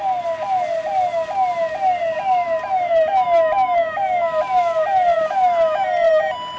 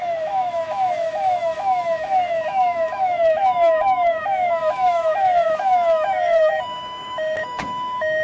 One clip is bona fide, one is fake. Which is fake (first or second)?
second